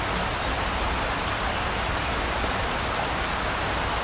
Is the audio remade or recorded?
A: recorded